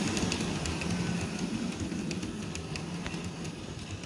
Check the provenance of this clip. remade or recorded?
recorded